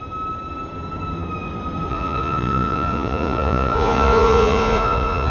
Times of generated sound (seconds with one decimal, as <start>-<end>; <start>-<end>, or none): 1.9-5.3